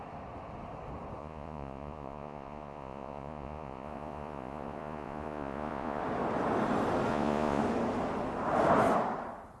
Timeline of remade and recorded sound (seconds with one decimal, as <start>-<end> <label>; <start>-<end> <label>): 0.0-1.2 recorded; 1.2-6.0 remade; 6.0-7.1 recorded; 7.1-7.6 remade; 7.6-9.6 recorded